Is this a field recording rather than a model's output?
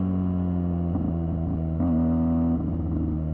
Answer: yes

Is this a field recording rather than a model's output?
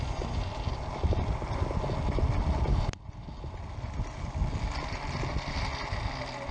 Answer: yes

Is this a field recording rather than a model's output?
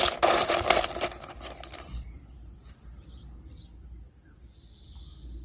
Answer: yes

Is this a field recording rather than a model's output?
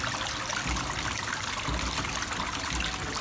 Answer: yes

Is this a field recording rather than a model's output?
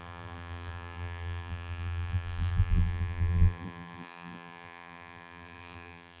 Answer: no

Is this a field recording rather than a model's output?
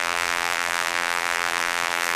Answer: no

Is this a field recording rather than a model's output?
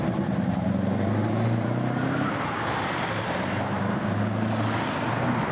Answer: no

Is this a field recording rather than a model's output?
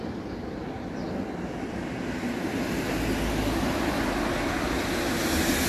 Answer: yes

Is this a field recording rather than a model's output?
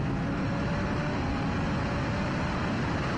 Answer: no